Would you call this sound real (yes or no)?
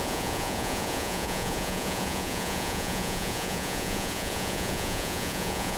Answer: no